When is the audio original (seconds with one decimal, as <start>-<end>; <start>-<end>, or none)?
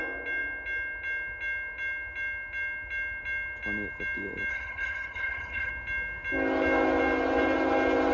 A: 0.0-4.5; 5.7-8.1